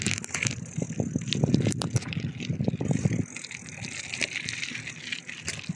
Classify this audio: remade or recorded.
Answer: recorded